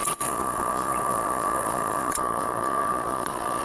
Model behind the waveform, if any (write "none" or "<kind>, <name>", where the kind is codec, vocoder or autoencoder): vocoder, Vocos